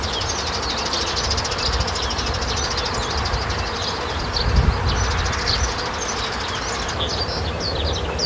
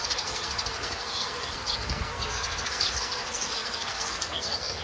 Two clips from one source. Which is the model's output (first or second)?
second